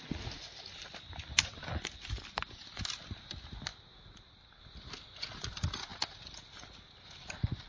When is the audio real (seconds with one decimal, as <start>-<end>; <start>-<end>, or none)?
0.0-7.7